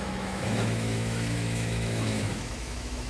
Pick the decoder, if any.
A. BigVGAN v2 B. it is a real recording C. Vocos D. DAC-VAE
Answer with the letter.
D